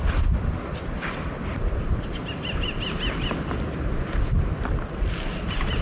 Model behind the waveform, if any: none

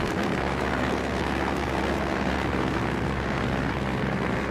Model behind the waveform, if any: codec, SNAC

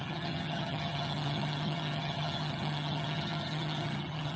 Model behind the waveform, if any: vocoder, HiFi-GAN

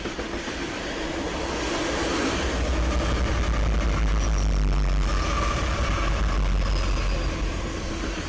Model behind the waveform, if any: none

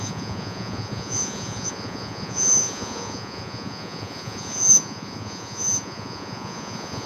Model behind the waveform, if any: vocoder, Vocos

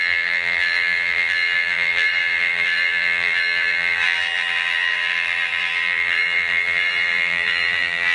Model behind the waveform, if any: vocoder, BigVGAN v2